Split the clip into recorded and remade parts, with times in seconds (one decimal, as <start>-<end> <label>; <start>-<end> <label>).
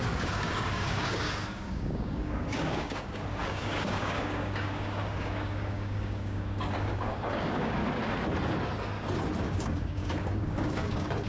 0.0-7.8 remade; 7.8-9.4 recorded; 9.4-11.3 remade